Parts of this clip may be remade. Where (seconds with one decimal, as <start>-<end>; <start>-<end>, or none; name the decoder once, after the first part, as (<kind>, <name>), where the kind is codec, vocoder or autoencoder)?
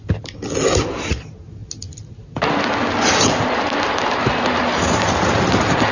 none